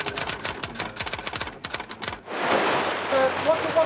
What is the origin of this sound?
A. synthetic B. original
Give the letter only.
B